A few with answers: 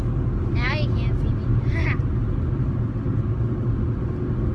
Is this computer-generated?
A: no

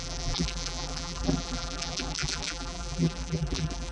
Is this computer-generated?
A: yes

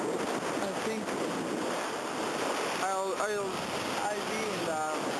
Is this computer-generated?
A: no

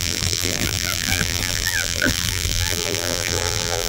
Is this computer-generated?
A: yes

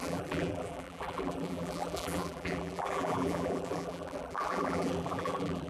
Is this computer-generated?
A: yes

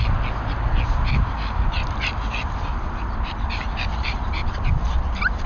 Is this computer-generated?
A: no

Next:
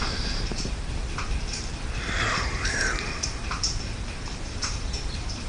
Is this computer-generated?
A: yes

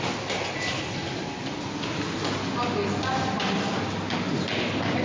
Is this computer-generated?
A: no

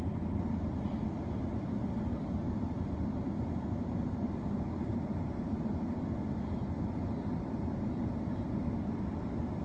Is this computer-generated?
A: no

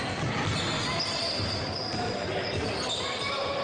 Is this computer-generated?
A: no